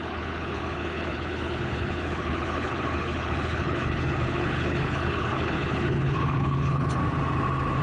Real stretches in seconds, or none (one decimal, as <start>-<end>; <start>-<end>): 7.0-7.8